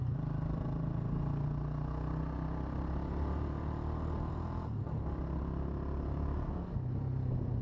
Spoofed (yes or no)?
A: no